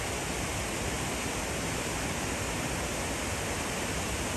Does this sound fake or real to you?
real